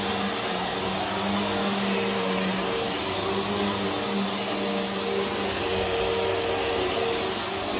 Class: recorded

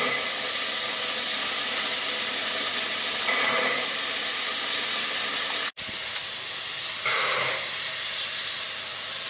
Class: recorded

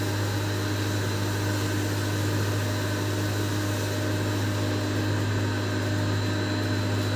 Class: recorded